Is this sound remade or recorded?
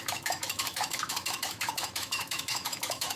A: remade